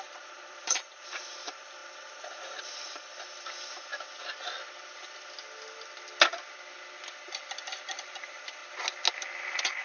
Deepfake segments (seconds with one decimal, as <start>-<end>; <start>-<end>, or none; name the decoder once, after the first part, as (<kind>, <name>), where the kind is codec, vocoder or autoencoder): 0.0-3.9 (vocoder, BigVGAN v2); 7.6-8.6; 9.4-9.8